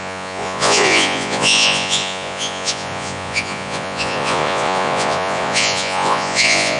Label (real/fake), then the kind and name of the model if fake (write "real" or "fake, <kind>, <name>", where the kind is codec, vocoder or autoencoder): fake, vocoder, Vocos